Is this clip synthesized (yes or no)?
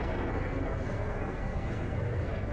yes